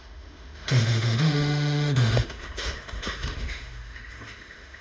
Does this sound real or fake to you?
fake